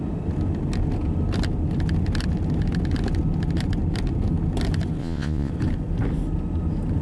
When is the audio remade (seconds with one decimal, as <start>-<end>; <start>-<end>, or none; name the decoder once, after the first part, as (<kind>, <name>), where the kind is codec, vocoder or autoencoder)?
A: 5.0-5.5 (vocoder, Vocos)